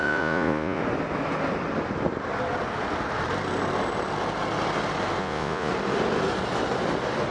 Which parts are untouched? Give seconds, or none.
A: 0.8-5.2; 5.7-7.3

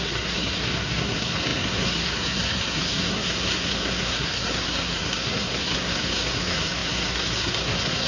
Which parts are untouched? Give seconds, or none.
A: none

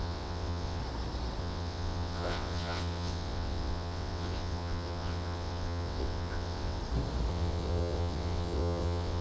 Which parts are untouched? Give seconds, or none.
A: 0.8-1.4; 6.8-7.3

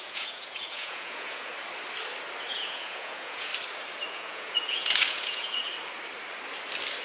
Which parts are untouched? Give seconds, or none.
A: 1.5-2.4; 3.5-4.1; 5.6-7.0

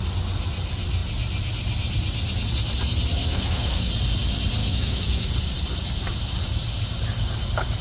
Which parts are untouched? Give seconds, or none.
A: 0.0-3.2; 3.9-4.6; 5.3-7.8

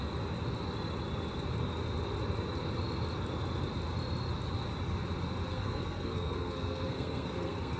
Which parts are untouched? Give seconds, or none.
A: 0.0-5.5

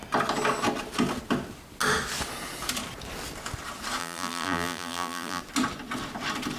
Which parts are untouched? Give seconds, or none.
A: 0.0-4.0; 5.4-6.6